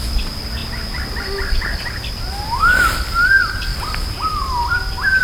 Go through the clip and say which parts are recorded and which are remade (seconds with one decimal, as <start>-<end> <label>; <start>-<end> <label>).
0.0-5.2 recorded